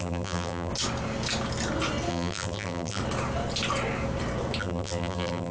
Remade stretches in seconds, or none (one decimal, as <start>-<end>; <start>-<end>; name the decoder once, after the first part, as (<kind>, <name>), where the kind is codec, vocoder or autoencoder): 0.0-0.7 (vocoder, BigVGAN v2); 2.1-3.0; 4.6-5.5